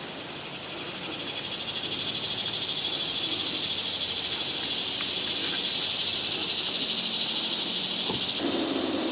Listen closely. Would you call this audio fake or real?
real